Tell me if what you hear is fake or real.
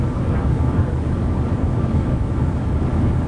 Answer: fake